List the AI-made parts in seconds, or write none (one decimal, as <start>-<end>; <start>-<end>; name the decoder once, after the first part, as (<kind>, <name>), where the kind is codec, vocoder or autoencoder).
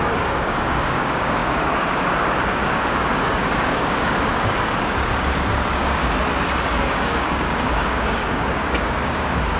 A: 0.0-6.0 (codec, DAC); 6.8-9.6